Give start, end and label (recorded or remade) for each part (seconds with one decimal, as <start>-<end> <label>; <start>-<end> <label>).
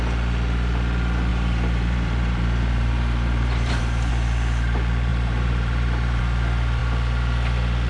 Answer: 0.0-1.3 recorded; 1.3-4.1 remade; 4.1-5.1 recorded; 5.1-6.2 remade; 6.2-7.9 recorded